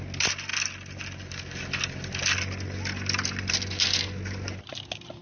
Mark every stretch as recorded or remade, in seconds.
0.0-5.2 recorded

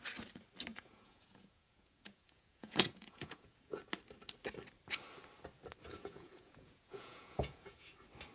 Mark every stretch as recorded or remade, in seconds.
0.0-0.7 recorded; 0.7-3.8 remade; 3.8-5.9 recorded; 5.9-7.9 remade; 7.9-8.3 recorded

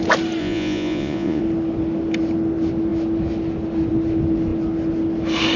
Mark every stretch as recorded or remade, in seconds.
0.0-0.4 recorded; 0.4-1.4 remade; 1.4-5.6 recorded

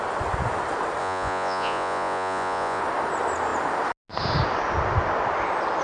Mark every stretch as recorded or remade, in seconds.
0.0-1.0 recorded; 1.0-2.8 remade; 2.8-5.8 recorded

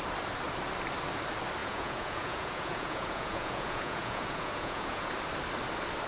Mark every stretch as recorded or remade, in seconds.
0.0-1.6 recorded; 1.6-5.1 remade; 5.1-6.1 recorded